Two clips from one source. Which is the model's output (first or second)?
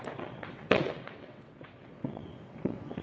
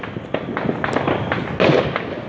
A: first